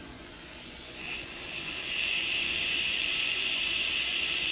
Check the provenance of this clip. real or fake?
fake